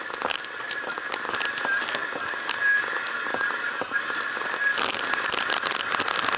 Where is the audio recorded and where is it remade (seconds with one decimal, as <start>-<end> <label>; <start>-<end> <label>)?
0.0-6.4 recorded